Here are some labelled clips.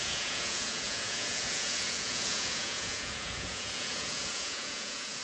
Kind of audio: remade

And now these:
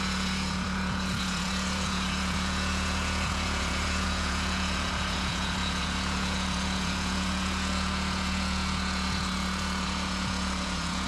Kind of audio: remade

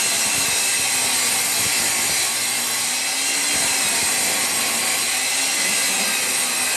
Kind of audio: recorded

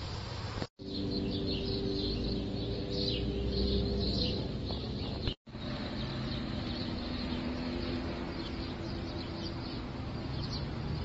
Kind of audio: recorded